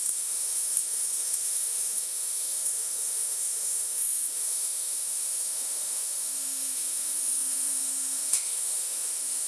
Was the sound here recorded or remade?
remade